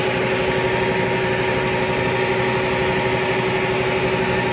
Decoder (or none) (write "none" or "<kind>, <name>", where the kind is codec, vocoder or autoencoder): none